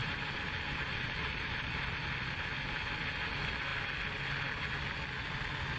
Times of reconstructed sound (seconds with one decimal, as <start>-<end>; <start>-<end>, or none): 0.0-2.0